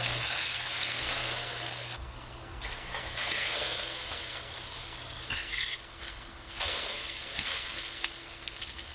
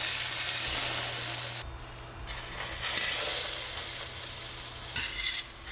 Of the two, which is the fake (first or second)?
first